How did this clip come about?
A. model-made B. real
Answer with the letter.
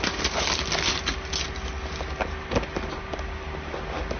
B